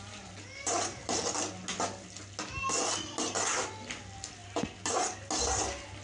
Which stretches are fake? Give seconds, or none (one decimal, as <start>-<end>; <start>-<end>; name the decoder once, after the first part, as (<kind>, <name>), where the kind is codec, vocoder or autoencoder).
none